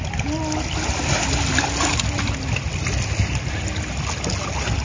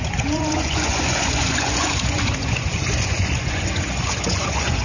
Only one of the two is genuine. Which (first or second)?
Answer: first